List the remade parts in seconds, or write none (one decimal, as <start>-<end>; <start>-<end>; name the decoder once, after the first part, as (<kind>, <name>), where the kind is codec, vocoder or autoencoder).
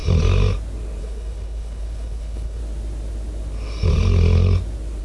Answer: 1.0-2.6 (codec, HILCodec)